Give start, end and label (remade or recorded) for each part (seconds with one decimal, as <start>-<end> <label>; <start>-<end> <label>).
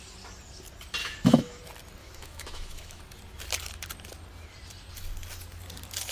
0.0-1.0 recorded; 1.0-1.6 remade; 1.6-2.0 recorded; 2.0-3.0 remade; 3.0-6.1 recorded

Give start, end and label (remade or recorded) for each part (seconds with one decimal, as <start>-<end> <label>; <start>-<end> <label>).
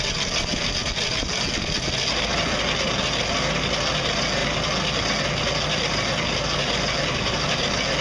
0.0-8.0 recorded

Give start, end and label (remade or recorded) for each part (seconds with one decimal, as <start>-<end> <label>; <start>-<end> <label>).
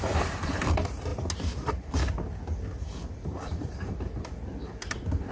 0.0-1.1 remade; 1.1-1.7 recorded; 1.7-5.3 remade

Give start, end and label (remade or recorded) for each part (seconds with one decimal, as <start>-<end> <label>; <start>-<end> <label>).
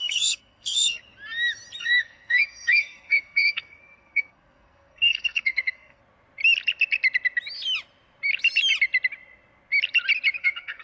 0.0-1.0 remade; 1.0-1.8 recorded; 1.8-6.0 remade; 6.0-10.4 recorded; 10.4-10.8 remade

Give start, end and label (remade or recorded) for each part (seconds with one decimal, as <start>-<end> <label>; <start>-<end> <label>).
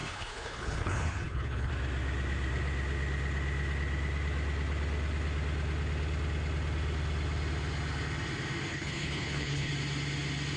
0.0-1.7 remade; 1.7-8.7 recorded; 8.7-9.7 remade; 9.7-10.6 recorded